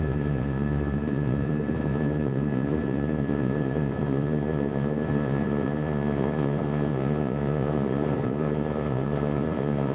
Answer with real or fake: fake